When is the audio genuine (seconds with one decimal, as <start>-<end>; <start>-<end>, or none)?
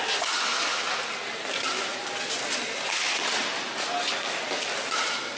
0.0-5.4